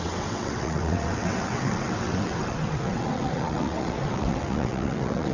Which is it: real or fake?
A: fake